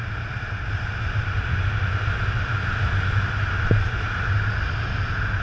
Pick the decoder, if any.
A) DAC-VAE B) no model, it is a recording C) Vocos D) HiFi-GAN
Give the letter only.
B